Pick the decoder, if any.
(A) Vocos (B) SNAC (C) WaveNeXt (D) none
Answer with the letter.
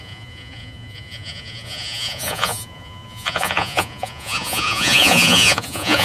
A